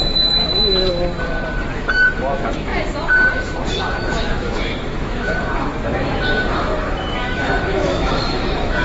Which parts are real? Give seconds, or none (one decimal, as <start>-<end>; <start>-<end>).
0.4-1.9; 2.7-3.8